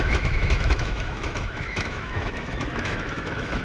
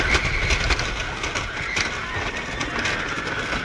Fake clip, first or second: first